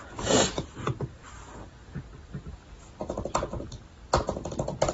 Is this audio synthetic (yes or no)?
no